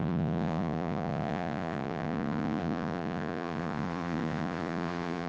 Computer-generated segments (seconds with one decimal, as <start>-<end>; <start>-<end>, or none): 0.0-5.3